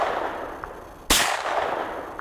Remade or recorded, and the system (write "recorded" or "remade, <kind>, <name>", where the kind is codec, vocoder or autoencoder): recorded